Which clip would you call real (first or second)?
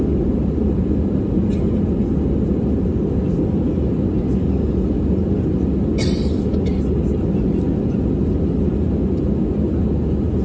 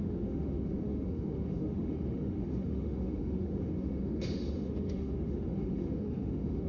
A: first